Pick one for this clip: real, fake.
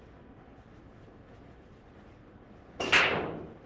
real